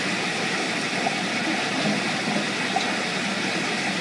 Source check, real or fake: real